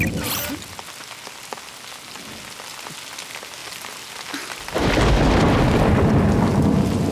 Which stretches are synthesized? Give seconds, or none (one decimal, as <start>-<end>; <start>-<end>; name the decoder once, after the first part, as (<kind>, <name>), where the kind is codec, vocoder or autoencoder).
none